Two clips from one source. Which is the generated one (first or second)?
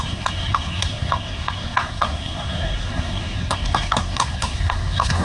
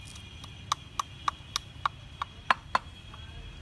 first